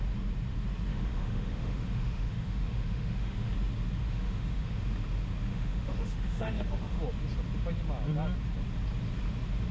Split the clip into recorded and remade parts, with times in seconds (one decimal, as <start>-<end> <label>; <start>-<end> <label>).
0.0-0.9 recorded; 0.9-3.5 remade; 3.5-4.0 recorded; 4.0-4.8 remade; 4.8-5.5 recorded; 5.5-7.0 remade; 7.0-9.7 recorded